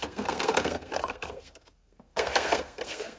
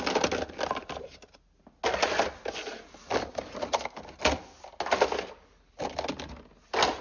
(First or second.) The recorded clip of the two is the second